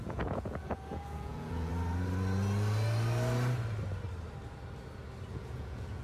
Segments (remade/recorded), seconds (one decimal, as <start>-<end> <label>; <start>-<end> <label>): 0.0-1.7 remade; 1.7-5.3 recorded; 5.3-6.0 remade